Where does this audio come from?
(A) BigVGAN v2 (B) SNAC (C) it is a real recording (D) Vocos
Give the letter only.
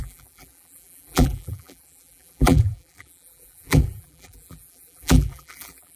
A